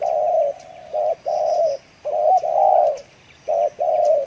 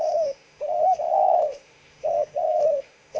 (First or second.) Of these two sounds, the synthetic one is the second